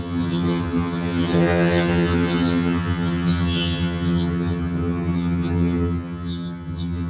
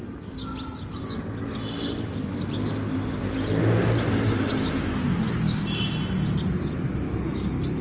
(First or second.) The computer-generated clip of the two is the first